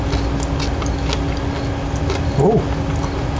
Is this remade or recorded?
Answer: recorded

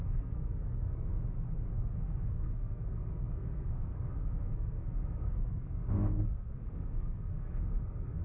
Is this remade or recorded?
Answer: remade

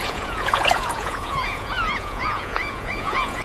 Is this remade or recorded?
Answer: remade